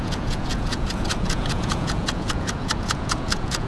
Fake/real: fake